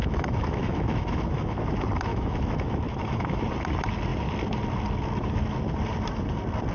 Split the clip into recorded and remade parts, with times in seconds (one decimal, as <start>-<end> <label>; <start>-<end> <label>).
0.0-1.6 remade; 1.6-2.1 recorded; 2.1-3.4 remade; 3.4-6.7 recorded